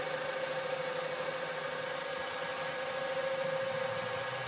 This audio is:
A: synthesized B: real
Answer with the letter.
B